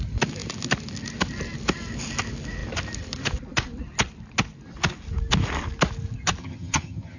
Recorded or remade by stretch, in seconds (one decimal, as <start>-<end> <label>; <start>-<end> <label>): 0.0-6.4 recorded; 6.4-7.2 remade